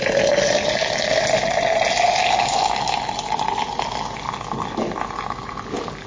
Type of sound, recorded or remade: recorded